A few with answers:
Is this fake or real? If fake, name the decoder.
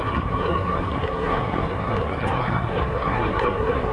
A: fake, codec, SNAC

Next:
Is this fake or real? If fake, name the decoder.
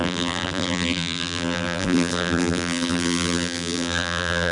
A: fake, vocoder, BigVGAN v2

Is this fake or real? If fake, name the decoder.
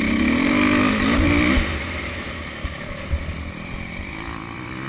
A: real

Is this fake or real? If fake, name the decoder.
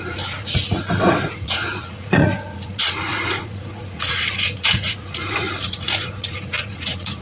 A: fake, vocoder, Vocos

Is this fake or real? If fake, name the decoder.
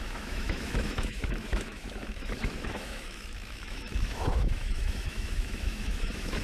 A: fake, autoencoder, DAC-VAE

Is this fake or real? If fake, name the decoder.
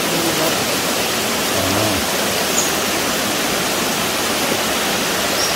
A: real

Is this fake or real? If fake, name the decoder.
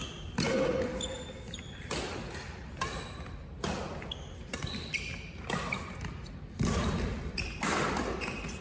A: real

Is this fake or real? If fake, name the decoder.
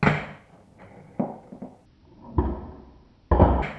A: real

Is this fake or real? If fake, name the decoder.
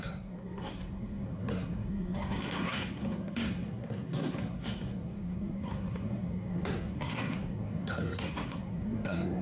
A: fake, codec, SNAC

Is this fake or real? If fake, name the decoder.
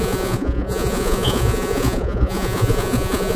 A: fake, vocoder, Vocos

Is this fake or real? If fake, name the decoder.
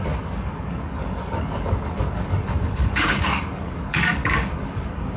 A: fake, codec, DAC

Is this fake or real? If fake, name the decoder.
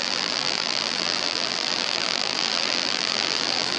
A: fake, vocoder, BigVGAN v2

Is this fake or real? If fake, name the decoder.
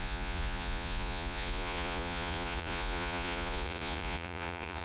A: fake, vocoder, Vocos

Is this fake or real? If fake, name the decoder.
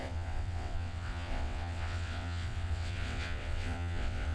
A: fake, vocoder, WaveNeXt